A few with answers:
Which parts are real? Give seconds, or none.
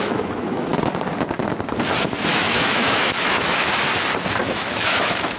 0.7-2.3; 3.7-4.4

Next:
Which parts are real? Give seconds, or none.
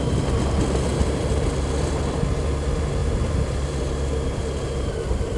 0.0-0.9; 2.2-5.4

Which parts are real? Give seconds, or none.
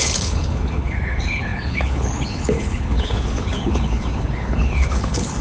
none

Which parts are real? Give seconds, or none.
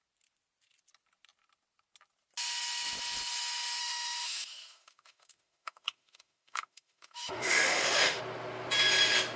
0.0-3.8; 8.2-9.4